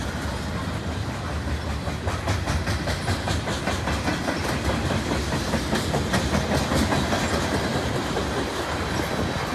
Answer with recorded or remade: recorded